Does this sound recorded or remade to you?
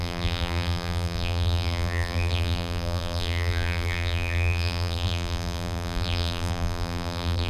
remade